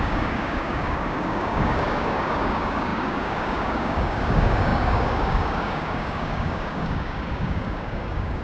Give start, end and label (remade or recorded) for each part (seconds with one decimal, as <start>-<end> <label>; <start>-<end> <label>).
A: 0.0-8.4 remade